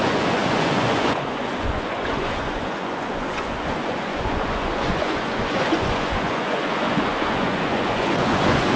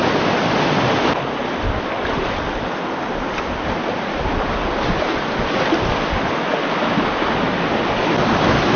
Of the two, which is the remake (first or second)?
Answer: first